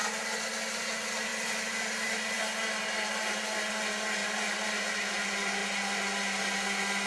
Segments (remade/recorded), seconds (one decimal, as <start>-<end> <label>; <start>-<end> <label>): 0.0-7.1 recorded